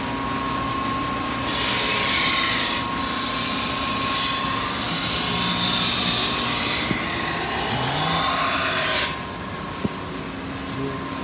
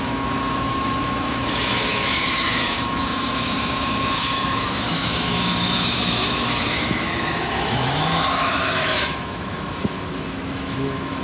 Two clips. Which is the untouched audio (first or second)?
first